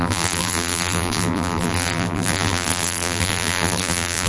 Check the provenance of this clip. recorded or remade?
remade